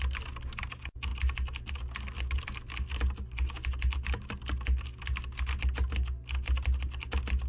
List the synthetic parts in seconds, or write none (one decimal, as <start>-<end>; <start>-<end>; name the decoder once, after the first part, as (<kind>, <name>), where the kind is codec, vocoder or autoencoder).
none

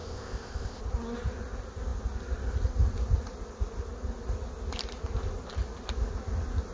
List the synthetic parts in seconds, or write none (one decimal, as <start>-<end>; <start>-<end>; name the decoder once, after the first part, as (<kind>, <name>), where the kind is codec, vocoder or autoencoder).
0.0-0.8 (codec, ZipCodec)